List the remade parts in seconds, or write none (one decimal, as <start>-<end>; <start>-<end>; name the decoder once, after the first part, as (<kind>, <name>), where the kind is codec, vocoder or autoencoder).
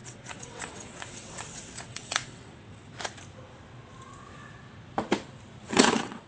0.0-2.9 (vocoder, WaveNeXt); 5.6-6.3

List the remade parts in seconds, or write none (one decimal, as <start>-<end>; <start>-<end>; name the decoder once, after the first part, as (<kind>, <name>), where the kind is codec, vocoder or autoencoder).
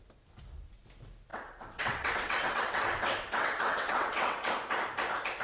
1.3-4.5 (vocoder, WaveNeXt)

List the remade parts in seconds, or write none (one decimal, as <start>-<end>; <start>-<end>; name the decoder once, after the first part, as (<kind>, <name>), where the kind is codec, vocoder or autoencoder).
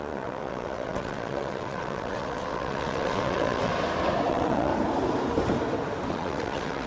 0.0-3.7 (vocoder, WaveNeXt); 4.3-4.7; 6.1-6.9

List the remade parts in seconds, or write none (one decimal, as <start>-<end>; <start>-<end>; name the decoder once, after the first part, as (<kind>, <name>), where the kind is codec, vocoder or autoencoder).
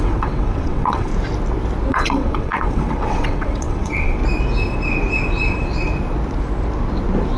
0.0-1.1 (vocoder, WaveNeXt); 1.9-4.2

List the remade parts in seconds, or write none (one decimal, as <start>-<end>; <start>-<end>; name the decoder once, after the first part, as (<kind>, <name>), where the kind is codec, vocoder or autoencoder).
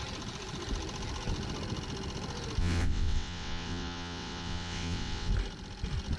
2.6-5.3 (vocoder, WaveNeXt)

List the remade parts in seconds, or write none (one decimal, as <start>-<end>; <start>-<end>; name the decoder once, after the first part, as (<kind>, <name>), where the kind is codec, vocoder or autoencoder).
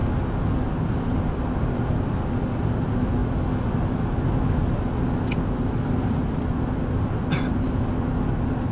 none